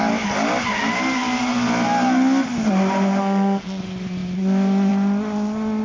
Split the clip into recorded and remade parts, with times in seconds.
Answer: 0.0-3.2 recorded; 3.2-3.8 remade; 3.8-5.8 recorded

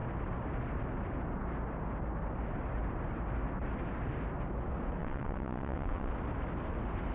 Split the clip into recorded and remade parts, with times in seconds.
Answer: 0.0-5.0 recorded; 5.0-6.1 remade; 6.1-7.1 recorded

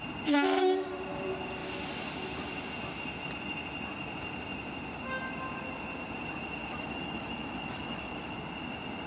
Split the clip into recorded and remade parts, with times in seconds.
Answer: 0.0-6.6 recorded; 6.6-8.4 remade; 8.4-9.1 recorded

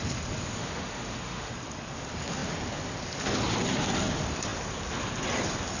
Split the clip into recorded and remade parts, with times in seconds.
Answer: 0.0-0.5 recorded; 0.5-1.5 remade; 1.5-5.8 recorded

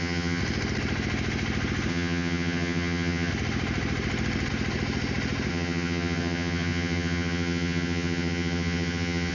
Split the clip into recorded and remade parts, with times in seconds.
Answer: 0.0-0.4 remade; 0.4-1.9 recorded; 1.9-3.3 remade; 3.3-5.5 recorded; 5.5-9.3 remade

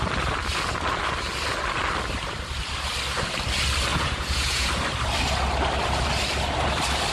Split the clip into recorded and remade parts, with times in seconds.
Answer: 0.0-3.9 recorded; 3.9-4.7 remade; 4.7-7.1 recorded

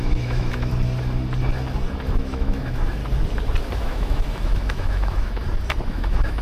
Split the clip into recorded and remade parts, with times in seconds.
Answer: 0.0-0.7 remade; 0.7-2.1 recorded; 2.1-3.0 remade; 3.0-3.8 recorded; 3.8-5.4 remade; 5.4-5.9 recorded; 5.9-6.4 remade